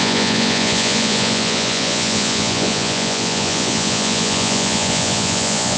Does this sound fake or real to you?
fake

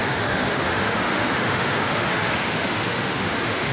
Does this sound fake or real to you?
fake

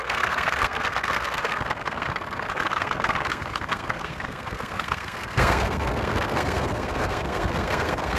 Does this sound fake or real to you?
fake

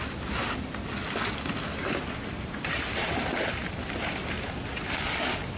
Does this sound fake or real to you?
real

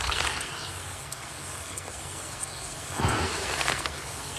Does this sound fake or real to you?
fake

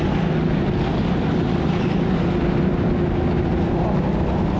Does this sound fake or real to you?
real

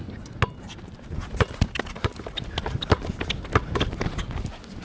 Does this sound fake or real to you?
real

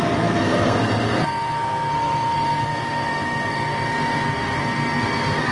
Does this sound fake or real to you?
fake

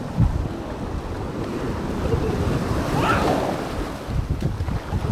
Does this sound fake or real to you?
real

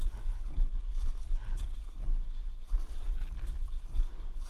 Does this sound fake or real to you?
real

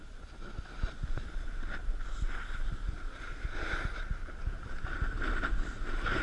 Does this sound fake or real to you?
real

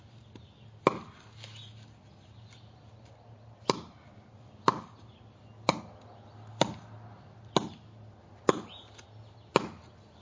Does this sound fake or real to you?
real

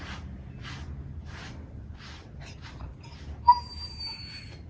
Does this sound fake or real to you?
real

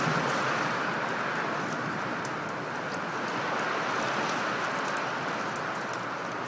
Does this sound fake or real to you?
real